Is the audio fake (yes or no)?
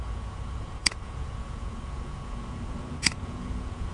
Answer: yes